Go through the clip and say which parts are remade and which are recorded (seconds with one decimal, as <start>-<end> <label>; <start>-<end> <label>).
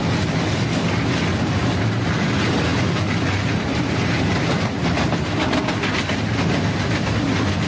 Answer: 0.0-7.7 recorded